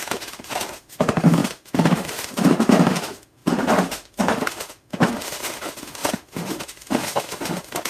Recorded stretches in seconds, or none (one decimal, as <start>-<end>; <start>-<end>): none